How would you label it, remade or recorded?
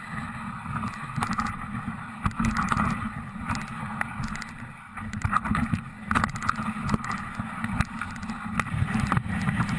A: recorded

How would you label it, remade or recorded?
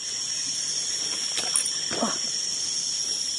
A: recorded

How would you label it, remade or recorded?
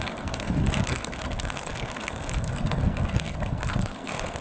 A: remade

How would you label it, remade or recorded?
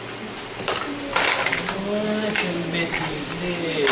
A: recorded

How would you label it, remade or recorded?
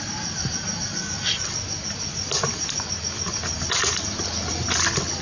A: recorded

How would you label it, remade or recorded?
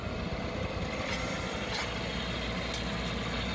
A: recorded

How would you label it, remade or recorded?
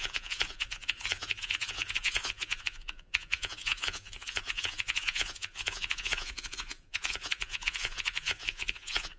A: remade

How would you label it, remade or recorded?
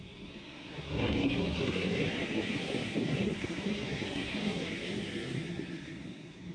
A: remade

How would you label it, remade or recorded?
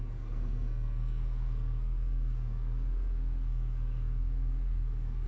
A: remade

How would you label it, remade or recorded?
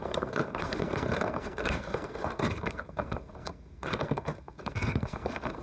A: remade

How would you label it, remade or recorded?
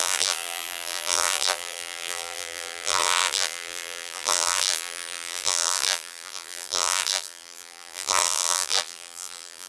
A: remade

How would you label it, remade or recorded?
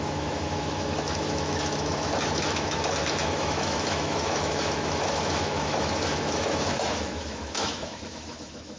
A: remade